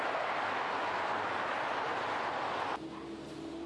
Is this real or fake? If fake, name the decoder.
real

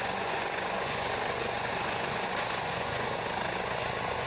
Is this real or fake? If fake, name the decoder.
fake, vocoder, Vocos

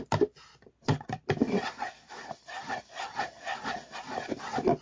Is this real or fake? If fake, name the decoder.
real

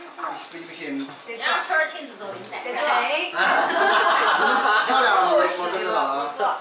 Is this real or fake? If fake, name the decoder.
real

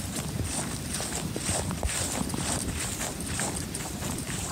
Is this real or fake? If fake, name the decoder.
fake, vocoder, BigVGAN v2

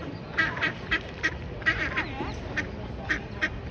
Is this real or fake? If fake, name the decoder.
fake, vocoder, BigVGAN v2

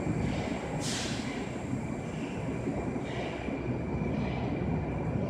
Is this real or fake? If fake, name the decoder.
real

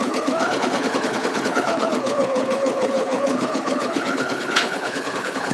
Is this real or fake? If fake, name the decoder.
fake, codec, HILCodec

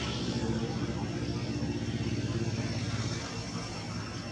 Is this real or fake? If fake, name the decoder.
real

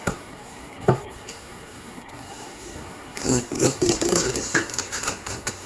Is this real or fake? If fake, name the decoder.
fake, codec, SNAC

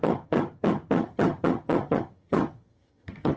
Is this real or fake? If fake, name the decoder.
fake, vocoder, HiFi-GAN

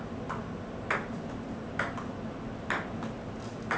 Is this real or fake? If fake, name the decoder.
real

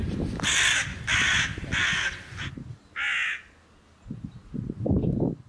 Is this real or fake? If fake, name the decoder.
real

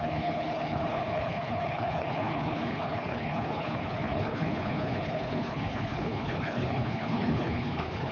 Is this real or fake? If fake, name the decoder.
fake, codec, HILCodec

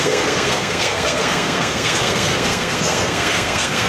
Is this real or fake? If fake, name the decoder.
fake, codec, SNAC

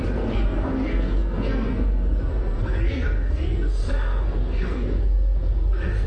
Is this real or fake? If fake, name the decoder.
fake, codec, SNAC